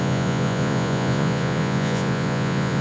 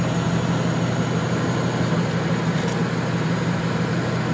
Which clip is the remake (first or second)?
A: first